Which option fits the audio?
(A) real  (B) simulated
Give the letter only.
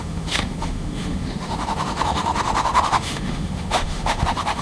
B